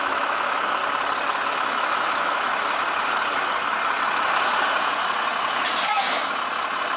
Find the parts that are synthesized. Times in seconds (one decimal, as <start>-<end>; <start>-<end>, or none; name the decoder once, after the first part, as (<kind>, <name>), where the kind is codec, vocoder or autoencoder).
0.0-0.8 (autoencoder, DAC-VAE); 1.5-2.5

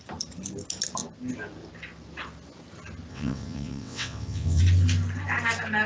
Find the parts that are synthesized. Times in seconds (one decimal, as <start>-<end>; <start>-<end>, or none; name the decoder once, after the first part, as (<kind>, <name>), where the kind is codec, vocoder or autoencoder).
3.1-4.6 (vocoder, WaveNeXt)

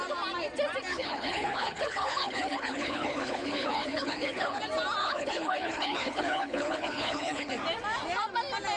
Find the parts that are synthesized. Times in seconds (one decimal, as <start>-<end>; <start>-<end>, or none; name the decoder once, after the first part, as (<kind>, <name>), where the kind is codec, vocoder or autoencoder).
0.9-4.6 (codec, HILCodec); 5.0-7.5